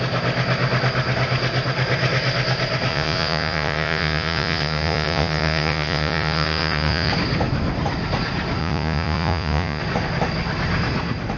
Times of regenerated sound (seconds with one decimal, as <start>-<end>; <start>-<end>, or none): 2.9-7.1; 8.6-9.8